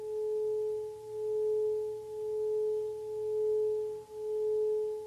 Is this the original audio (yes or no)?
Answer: yes